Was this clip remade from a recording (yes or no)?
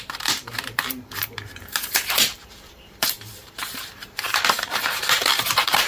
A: yes